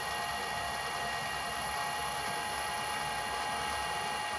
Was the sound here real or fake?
real